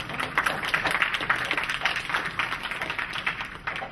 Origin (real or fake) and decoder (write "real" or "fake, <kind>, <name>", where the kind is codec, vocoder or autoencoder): real